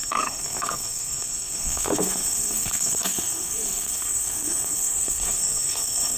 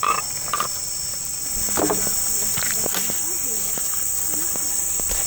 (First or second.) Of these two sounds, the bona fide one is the second